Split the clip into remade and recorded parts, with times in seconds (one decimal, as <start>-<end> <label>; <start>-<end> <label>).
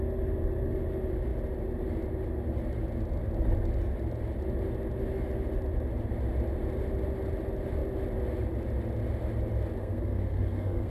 0.0-9.8 recorded; 9.8-10.9 remade